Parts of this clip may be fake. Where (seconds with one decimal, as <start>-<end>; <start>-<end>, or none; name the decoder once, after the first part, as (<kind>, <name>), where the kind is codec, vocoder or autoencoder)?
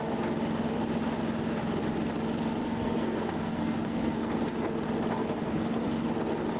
2.6-4.4 (codec, SNAC); 5.2-5.8